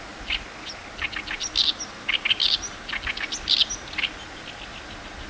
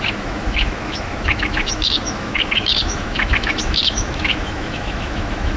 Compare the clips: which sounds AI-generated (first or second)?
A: second